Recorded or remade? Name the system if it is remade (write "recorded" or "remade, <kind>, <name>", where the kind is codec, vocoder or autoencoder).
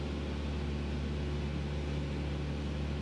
recorded